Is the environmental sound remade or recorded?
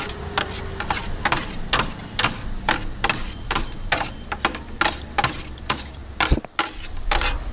recorded